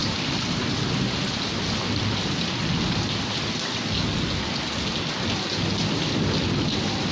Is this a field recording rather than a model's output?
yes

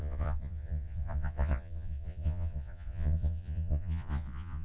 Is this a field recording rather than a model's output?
no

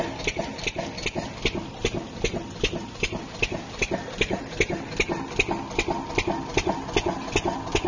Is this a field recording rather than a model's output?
yes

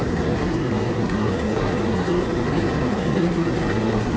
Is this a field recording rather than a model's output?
no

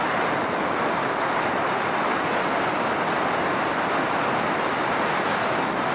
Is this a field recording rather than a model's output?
yes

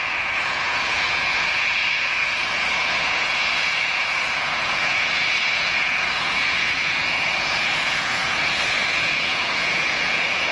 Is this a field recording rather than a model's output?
no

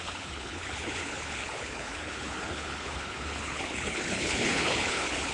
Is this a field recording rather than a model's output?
no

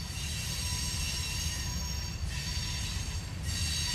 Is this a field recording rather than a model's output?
yes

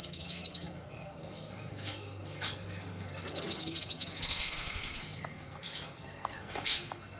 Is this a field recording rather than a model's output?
no